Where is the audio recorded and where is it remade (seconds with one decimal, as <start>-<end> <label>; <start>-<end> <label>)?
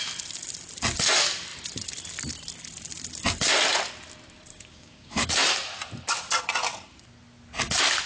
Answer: 0.0-4.5 recorded; 4.5-5.3 remade; 5.3-8.1 recorded